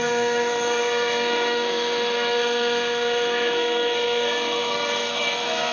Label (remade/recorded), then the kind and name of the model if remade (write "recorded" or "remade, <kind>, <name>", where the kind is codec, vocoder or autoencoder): remade, codec, SNAC